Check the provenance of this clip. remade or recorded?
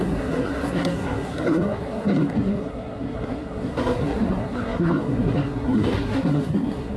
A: remade